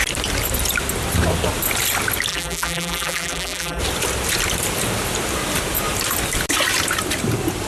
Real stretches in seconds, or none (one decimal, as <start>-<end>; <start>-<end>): 0.0-2.3; 3.8-7.7